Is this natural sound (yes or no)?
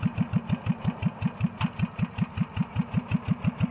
yes